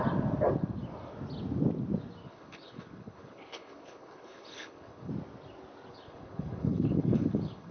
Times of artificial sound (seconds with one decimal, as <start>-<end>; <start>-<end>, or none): 2.2-5.1; 5.9-7.7